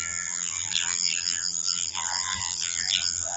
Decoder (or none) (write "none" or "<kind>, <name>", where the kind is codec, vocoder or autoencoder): vocoder, BigVGAN v2